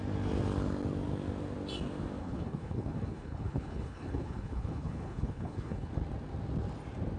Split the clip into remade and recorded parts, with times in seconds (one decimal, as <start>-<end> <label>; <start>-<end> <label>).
0.0-2.2 recorded; 2.2-5.9 remade; 5.9-7.2 recorded